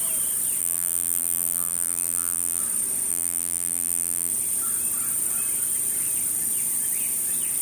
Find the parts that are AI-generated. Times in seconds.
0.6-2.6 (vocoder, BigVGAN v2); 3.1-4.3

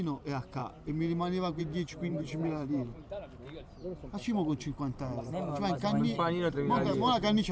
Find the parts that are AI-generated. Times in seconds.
2.1-3.2 (vocoder, BigVGAN v2)

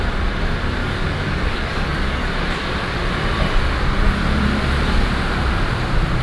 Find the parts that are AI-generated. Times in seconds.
0.8-2.3 (codec, DAC)

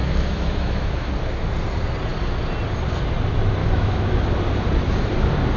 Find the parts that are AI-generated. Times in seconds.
0.0-1.1 (autoencoder, DAC-VAE); 3.6-4.2

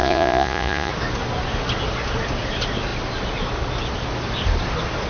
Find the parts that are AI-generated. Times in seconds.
0.0-0.9 (vocoder, Vocos)

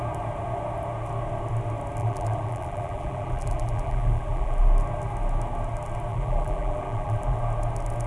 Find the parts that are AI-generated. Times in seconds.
2.0-4.6 (vocoder, BigVGAN v2); 6.1-7.4